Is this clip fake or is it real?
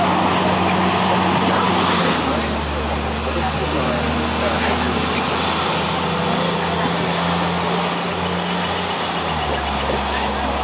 real